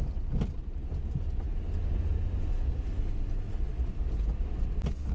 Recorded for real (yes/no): yes